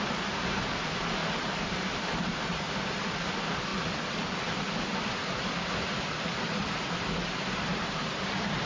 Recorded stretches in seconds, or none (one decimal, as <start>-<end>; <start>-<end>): 3.7-7.5